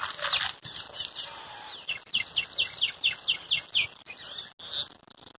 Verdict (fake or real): real